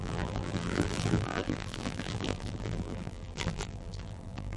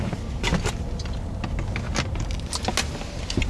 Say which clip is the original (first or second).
second